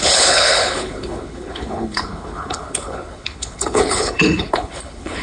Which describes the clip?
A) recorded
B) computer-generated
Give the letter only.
B